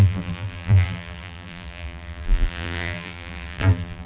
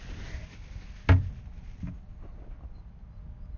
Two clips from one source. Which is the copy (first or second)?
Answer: first